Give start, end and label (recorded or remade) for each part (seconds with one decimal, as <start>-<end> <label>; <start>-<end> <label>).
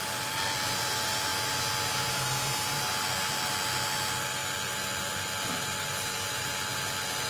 0.0-7.3 recorded